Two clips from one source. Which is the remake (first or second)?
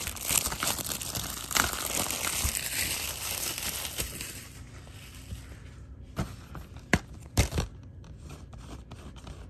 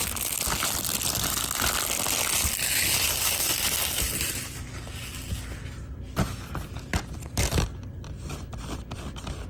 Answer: first